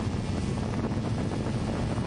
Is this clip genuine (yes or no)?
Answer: yes